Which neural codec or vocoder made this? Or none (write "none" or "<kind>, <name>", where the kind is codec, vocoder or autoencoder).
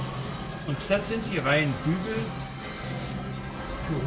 none